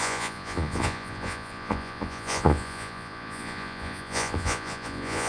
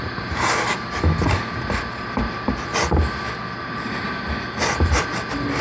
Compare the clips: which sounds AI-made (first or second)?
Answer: first